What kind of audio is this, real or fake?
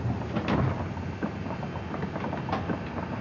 real